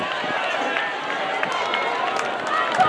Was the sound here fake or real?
real